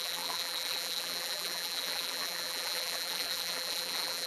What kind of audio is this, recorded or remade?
remade